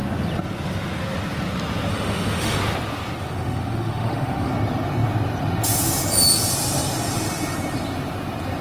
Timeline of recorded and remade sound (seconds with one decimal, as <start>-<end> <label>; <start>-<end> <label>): 0.0-1.9 recorded; 1.9-2.6 remade; 2.6-3.2 recorded; 3.2-4.5 remade; 4.5-8.6 recorded